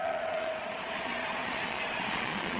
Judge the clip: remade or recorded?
remade